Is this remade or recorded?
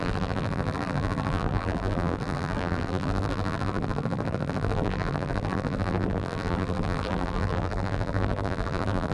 remade